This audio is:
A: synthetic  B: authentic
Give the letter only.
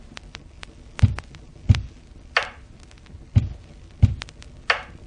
B